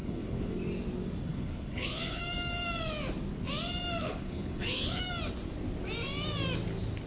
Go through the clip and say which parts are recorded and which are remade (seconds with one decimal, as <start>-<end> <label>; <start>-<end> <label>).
0.0-0.6 remade; 0.6-1.3 recorded; 1.3-2.2 remade; 2.2-4.0 recorded; 4.0-5.0 remade; 5.0-7.1 recorded